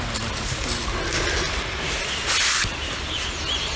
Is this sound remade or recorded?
recorded